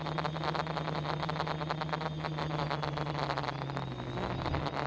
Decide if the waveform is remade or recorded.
recorded